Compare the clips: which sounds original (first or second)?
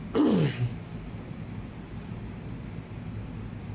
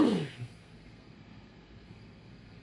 first